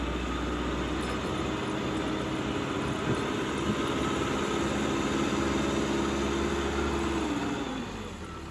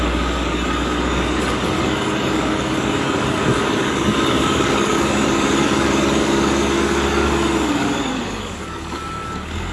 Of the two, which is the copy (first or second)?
second